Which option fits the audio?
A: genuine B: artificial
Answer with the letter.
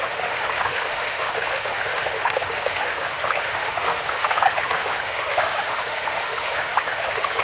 B